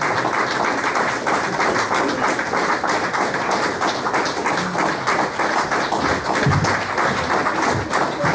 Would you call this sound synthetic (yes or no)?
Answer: no